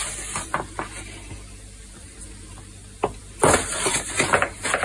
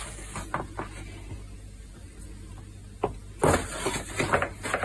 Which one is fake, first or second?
first